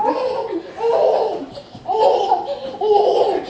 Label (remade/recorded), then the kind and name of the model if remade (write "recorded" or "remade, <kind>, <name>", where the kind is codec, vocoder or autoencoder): recorded